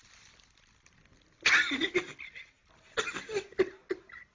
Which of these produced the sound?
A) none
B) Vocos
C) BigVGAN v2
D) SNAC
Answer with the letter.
A